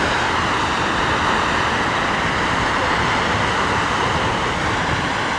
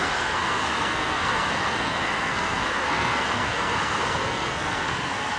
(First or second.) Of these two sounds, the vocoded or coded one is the second